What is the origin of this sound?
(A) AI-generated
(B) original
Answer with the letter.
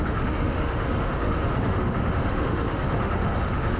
A